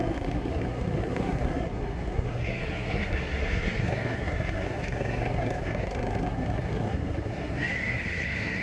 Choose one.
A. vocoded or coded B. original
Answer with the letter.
A